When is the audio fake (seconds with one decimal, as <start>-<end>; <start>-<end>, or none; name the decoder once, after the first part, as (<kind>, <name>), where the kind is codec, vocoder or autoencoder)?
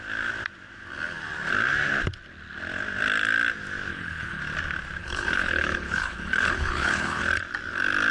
3.9-4.4 (codec, HILCodec); 5.0-7.2